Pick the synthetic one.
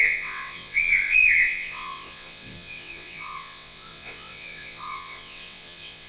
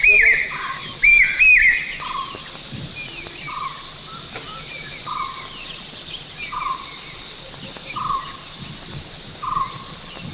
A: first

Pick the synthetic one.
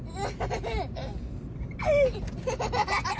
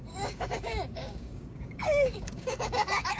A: second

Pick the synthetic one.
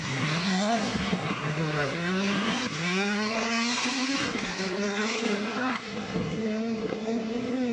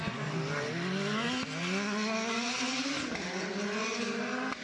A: first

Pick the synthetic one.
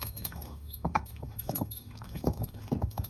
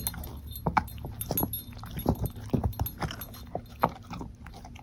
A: first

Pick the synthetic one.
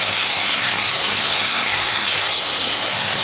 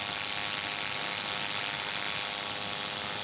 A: first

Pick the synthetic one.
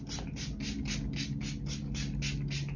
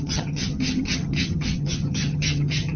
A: second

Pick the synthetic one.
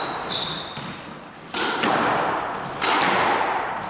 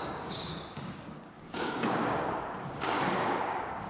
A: second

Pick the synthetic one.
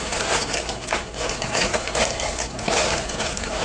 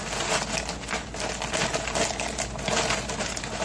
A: first